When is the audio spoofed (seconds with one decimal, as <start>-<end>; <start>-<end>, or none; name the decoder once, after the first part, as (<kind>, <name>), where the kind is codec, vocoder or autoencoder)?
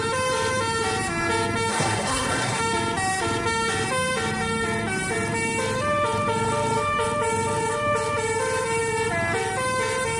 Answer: 1.7-2.6 (codec, SNAC)